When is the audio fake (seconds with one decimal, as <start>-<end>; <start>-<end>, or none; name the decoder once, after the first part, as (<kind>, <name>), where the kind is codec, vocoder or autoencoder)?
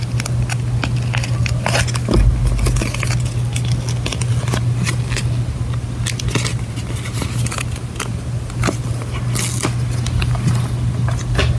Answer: 6.5-9.1 (vocoder, BigVGAN v2)